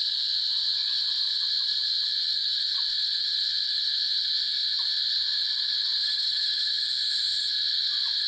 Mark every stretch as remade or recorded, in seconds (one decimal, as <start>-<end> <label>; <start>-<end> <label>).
0.0-6.0 recorded; 6.0-6.7 remade; 6.7-8.3 recorded